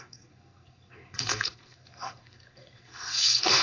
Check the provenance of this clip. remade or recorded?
remade